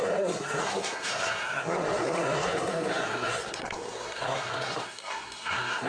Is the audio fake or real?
fake